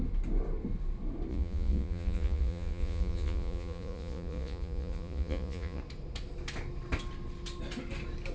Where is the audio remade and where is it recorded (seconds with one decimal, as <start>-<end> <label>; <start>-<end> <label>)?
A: 0.0-1.3 recorded; 1.3-5.8 remade; 5.8-8.3 recorded

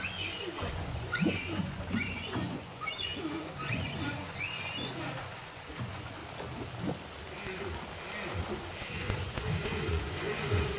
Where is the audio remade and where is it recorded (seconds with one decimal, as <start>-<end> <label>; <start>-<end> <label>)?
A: 0.0-6.2 remade; 6.2-8.4 recorded; 8.4-10.8 remade

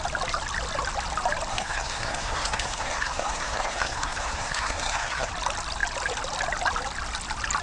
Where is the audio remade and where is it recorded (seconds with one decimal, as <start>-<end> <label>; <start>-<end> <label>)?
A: 0.0-1.5 recorded; 1.5-5.3 remade; 5.3-7.6 recorded

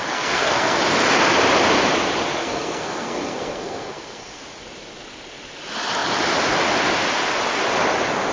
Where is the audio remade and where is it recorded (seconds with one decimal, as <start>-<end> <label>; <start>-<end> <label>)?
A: 0.0-0.8 remade; 0.8-2.4 recorded; 2.4-4.4 remade; 4.4-8.3 recorded

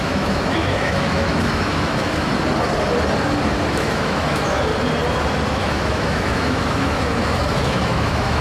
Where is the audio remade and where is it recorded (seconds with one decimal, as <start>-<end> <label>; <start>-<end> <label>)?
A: 0.0-2.3 remade; 2.3-3.7 recorded; 3.7-4.7 remade; 4.7-5.5 recorded; 5.5-8.4 remade

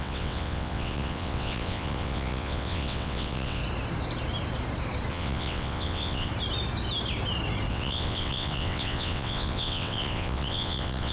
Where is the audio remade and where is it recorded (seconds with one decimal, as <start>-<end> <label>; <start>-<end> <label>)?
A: 0.0-3.6 remade; 3.6-5.1 recorded; 5.1-6.3 remade; 6.3-7.7 recorded; 7.7-11.1 remade